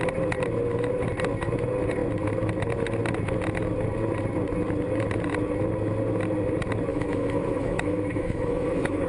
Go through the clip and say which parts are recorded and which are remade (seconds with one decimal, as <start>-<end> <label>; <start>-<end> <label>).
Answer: 0.0-6.9 recorded; 6.9-9.1 remade